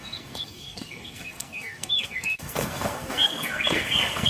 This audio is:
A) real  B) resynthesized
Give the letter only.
B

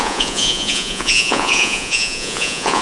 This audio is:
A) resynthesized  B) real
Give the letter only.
A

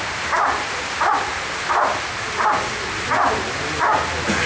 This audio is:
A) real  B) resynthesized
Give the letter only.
A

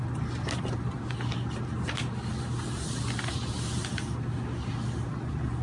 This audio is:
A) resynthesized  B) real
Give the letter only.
B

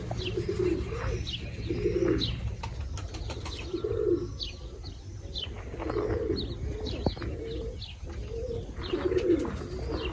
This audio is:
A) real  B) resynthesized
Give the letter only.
A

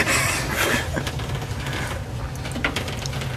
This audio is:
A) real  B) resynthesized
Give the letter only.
A